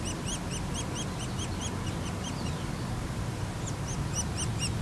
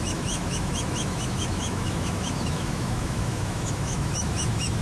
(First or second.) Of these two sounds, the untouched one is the first